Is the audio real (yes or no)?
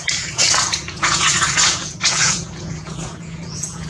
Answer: no